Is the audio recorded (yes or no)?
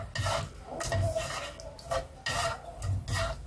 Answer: yes